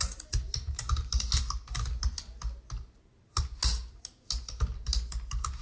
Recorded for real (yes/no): yes